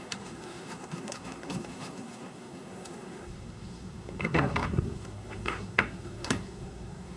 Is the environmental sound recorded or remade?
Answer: remade